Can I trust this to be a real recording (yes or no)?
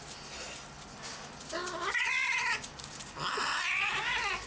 yes